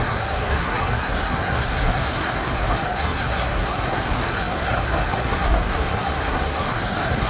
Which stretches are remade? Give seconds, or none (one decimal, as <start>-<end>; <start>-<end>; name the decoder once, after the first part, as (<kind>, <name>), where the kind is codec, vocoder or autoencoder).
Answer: 0.0-7.3 (codec, SNAC)